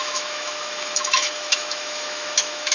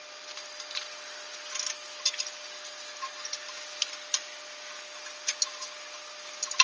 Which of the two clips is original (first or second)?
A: second